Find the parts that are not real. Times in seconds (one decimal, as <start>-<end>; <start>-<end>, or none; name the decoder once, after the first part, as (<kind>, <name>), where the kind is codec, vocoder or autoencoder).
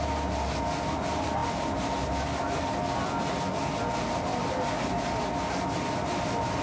none